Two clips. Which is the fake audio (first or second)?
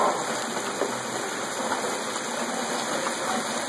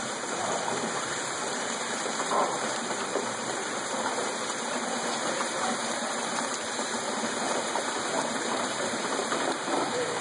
second